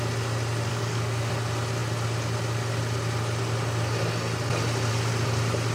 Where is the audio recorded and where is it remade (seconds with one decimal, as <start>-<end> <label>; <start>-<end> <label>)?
0.0-0.7 recorded; 0.7-1.3 remade; 1.3-5.7 recorded